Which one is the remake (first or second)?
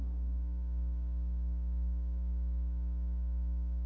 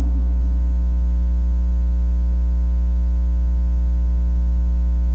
first